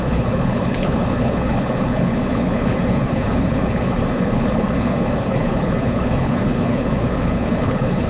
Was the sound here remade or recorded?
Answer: remade